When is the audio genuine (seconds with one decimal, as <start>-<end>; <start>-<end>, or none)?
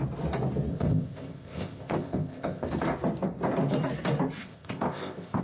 0.0-0.7; 2.7-4.4